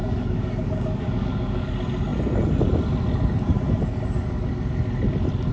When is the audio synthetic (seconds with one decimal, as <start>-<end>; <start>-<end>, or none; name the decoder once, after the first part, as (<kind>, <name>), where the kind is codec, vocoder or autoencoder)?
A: 0.0-1.7 (codec, DAC)